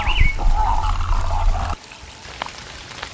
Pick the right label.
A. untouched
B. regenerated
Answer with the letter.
A